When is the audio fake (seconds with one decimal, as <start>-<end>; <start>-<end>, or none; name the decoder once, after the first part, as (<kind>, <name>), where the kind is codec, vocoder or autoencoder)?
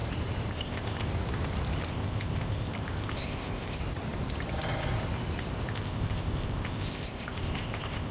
0.5-1.1 (codec, ZipCodec); 1.9-3.8; 5.7-8.1